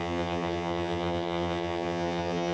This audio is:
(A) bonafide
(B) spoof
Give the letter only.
B